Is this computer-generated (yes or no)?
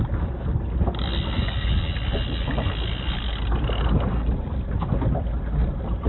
no